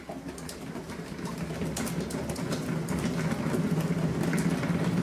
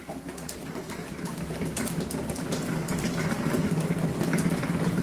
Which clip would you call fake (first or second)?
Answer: second